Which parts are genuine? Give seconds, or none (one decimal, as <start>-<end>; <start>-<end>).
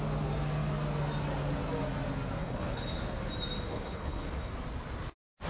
0.0-2.4; 3.0-3.7; 4.5-5.5